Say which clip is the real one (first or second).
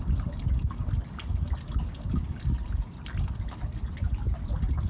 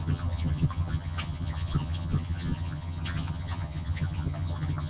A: first